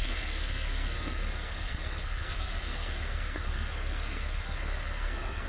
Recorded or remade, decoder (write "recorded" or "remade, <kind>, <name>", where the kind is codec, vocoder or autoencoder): remade, codec, SNAC